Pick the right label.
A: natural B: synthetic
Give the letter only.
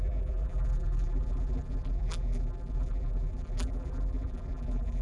B